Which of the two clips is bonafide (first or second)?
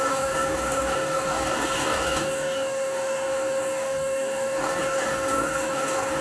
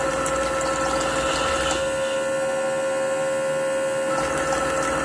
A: second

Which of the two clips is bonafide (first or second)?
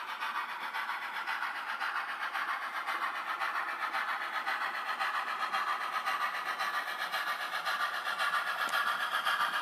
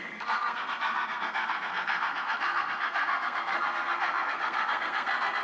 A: first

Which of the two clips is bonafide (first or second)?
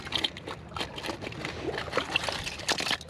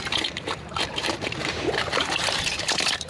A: first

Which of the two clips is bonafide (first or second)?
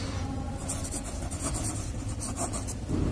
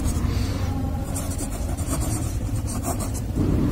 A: first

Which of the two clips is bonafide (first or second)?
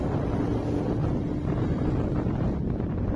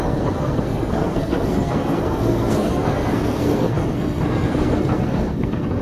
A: first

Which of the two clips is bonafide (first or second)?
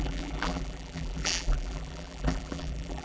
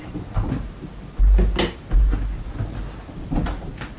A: second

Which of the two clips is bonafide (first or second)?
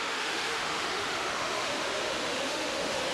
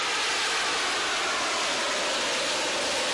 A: second